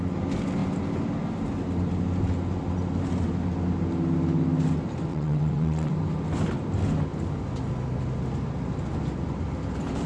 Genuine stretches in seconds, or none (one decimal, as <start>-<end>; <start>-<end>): 0.0-5.1; 5.9-10.1